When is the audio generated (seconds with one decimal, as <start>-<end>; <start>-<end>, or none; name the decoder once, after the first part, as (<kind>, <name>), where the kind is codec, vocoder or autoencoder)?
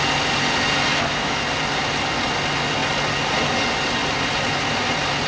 0.9-1.4 (autoencoder, DAC-VAE)